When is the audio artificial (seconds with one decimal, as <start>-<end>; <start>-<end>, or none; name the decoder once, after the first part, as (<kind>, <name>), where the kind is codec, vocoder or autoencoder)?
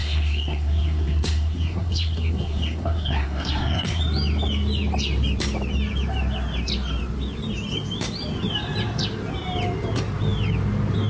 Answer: 0.0-4.0 (codec, SNAC)